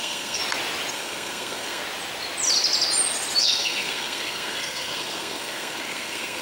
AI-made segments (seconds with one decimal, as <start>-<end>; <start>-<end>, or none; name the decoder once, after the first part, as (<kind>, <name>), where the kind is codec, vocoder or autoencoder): 0.0-0.4 (codec, SNAC); 0.9-1.8; 3.4-6.4